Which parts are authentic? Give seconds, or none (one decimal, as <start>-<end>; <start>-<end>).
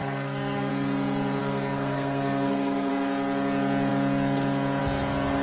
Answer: 0.7-1.4; 2.9-5.4